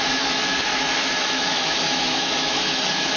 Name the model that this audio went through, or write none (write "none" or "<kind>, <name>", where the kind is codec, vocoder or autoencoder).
autoencoder, DAC-VAE